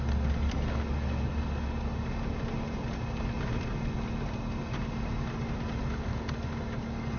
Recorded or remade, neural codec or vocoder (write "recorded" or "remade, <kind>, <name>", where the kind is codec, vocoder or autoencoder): recorded